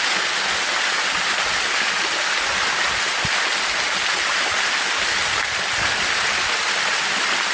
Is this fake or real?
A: real